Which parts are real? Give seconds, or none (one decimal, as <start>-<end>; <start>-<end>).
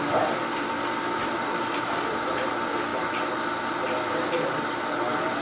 0.0-5.4